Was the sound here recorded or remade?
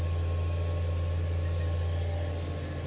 recorded